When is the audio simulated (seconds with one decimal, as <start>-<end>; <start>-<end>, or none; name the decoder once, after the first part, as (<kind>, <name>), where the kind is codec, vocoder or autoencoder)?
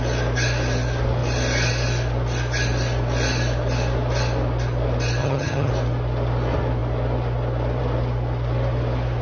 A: 5.2-5.7 (vocoder, HiFi-GAN)